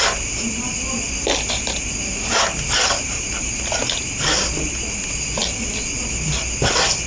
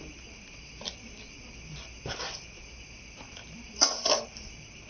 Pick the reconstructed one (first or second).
second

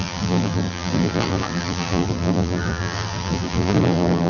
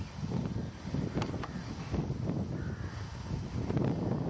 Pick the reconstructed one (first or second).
first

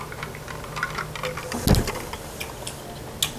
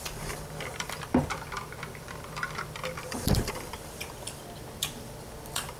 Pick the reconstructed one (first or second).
second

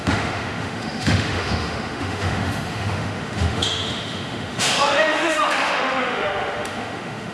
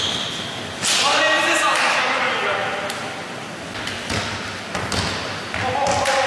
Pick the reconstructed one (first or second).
first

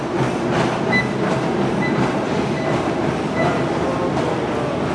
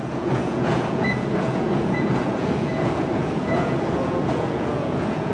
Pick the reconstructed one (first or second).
second